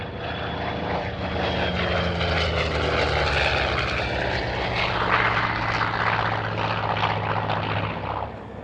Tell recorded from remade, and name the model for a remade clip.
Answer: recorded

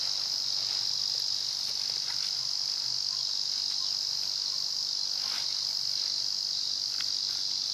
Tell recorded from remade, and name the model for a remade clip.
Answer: recorded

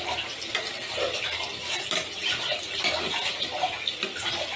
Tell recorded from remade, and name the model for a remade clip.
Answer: recorded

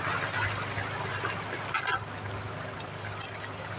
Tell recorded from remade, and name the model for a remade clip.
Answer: recorded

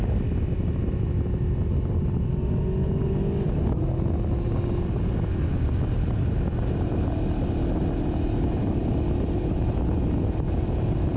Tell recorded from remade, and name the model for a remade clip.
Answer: recorded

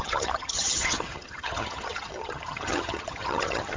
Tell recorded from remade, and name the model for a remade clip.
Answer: remade, vocoder, HiFi-GAN